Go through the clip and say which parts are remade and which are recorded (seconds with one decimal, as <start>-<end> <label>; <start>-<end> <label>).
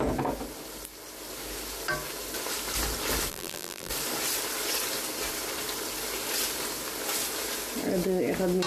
0.0-3.3 recorded; 3.3-3.9 remade; 3.9-8.7 recorded